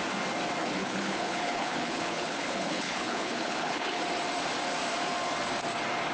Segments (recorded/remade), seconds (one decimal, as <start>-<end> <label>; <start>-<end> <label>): 0.0-0.6 recorded; 0.6-4.0 remade; 4.0-6.1 recorded